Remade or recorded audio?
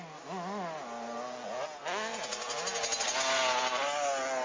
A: recorded